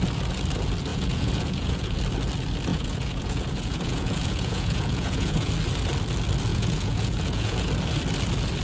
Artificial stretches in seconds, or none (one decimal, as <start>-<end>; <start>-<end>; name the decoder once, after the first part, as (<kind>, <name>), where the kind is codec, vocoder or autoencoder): 0.9-2.0 (vocoder, Vocos); 2.7-5.5; 6.5-7.7